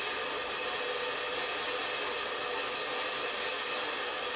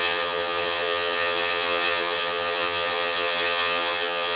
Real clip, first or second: first